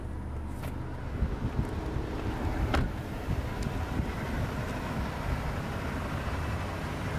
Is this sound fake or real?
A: real